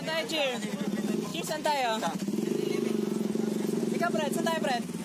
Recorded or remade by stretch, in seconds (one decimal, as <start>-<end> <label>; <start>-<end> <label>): 0.0-5.0 recorded